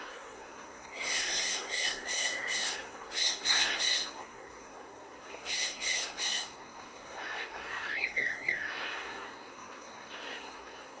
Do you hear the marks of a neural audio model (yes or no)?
yes